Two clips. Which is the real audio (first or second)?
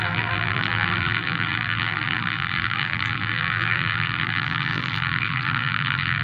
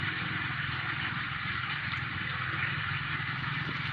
second